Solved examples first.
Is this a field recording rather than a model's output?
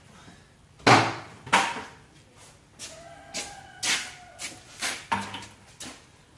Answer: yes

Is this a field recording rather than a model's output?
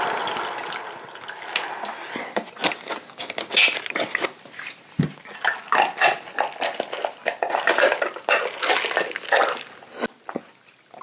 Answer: yes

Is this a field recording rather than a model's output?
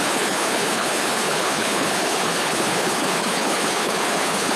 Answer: no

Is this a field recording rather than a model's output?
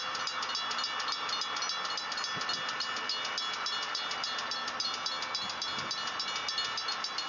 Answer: yes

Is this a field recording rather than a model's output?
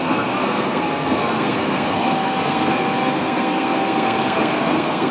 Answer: no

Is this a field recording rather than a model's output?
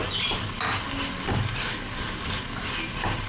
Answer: yes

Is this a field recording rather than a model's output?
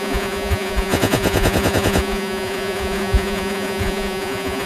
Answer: no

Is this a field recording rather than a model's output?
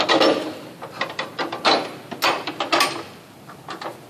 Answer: yes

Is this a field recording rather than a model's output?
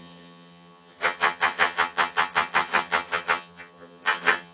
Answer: no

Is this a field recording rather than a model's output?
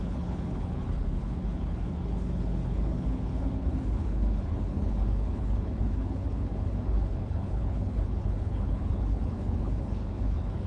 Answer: no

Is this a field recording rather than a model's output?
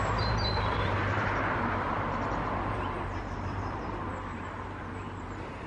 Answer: no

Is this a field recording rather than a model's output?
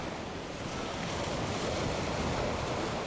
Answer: yes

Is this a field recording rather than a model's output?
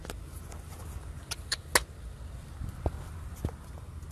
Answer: yes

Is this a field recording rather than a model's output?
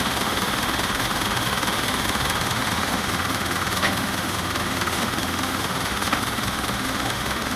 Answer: no